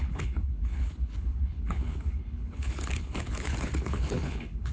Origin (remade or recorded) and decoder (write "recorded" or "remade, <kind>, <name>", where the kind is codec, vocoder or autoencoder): remade, codec, HILCodec